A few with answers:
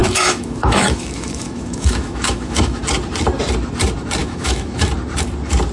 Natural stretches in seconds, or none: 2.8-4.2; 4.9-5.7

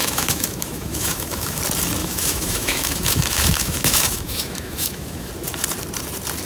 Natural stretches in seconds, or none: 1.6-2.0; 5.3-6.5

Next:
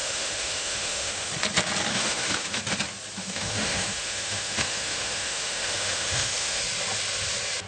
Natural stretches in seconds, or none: 1.3-1.9; 2.6-3.2; 6.6-7.7

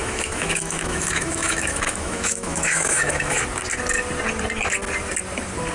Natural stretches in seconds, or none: 3.4-5.7

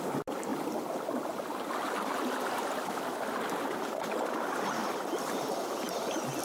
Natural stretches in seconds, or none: 0.0-6.4